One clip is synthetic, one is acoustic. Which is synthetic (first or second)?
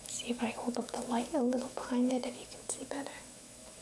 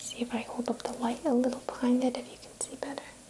first